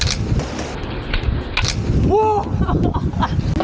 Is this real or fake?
real